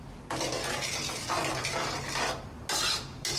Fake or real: real